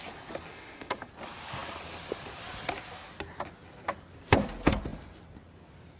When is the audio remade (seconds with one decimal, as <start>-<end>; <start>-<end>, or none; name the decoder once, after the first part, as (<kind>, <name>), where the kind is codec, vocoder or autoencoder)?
0.5-1.1 (autoencoder, DAC-VAE)